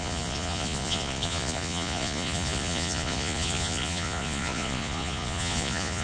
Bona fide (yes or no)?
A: no